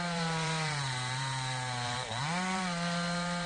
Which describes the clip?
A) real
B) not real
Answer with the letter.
B